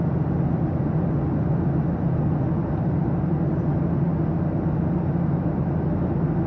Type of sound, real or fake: real